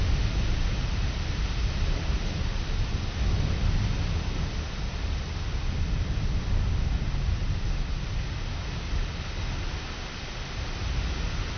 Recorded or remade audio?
recorded